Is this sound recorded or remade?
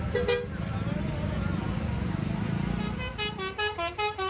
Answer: recorded